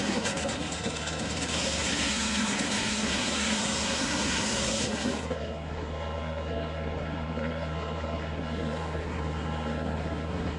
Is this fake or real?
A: fake